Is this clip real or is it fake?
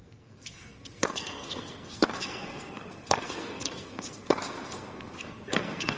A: fake